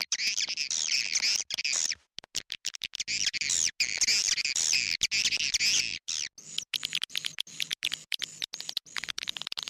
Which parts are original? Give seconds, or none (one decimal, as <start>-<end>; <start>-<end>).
0.0-9.7